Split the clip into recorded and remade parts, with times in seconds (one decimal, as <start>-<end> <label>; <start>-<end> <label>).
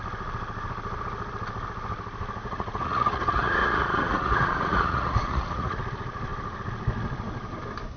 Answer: 0.0-2.4 recorded; 2.4-5.8 remade; 5.8-8.0 recorded